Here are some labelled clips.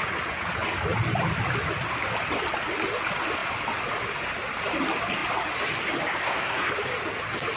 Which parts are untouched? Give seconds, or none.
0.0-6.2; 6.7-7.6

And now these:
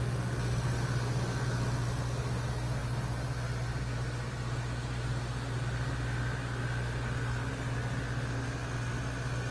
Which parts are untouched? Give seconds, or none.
0.0-9.5